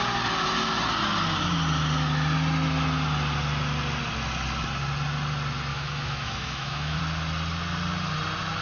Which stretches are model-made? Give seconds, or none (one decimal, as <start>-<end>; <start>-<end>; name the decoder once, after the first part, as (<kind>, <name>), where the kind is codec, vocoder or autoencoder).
5.7-7.0 (autoencoder, DAC-VAE)